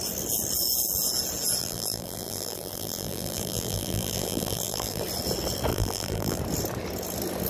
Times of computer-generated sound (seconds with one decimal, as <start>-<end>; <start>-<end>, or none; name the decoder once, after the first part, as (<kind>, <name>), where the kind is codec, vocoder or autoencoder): 1.6-5.0 (vocoder, BigVGAN v2); 5.7-6.4